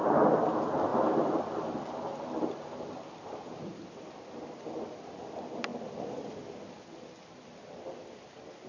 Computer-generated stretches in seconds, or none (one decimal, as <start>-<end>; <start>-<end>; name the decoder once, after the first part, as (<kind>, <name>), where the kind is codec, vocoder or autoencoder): none